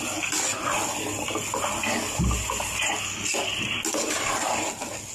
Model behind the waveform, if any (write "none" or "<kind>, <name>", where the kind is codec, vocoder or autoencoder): none